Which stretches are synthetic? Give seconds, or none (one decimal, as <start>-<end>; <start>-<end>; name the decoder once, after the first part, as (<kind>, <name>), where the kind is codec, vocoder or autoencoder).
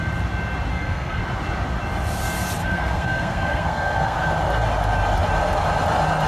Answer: 0.7-1.2 (codec, SNAC); 2.6-4.3